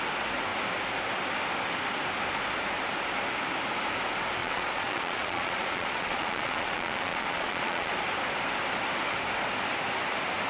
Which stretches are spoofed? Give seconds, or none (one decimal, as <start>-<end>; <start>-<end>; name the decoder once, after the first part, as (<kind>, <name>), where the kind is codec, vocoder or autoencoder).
4.4-7.9 (vocoder, Vocos)